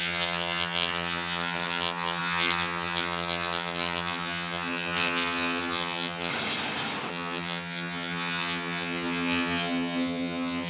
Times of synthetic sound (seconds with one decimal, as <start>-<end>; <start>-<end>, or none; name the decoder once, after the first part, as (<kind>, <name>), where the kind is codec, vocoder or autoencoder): 0.0-6.3 (vocoder, HiFi-GAN); 7.1-10.7